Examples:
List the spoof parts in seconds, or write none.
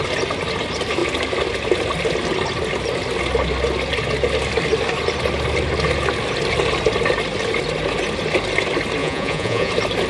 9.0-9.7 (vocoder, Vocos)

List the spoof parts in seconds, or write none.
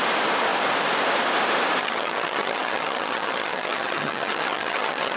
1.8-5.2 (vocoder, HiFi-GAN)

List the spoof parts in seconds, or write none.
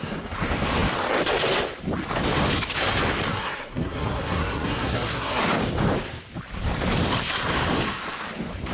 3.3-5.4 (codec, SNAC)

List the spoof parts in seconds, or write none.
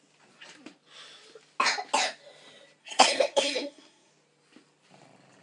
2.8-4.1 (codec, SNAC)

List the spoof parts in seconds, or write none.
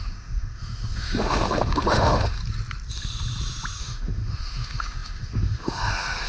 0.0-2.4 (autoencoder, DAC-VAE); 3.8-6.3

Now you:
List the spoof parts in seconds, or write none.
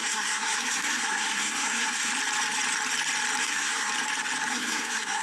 0.0-2.1 (codec, SNAC); 3.4-3.9; 4.5-5.2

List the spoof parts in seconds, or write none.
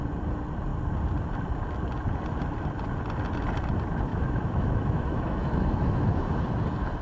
4.1-6.4 (autoencoder, DAC-VAE)